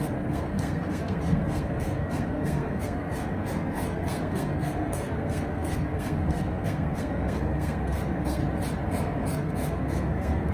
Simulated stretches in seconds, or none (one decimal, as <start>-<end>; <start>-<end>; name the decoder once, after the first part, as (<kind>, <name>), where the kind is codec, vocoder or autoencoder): 0.0-8.4 (codec, SNAC); 8.9-10.5